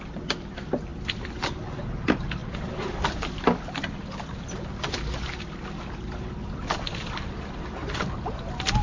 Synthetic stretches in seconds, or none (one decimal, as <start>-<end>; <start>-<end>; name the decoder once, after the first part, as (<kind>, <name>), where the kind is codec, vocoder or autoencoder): none